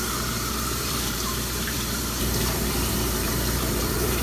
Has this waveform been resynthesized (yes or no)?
yes